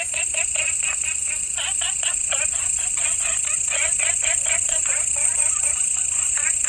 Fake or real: fake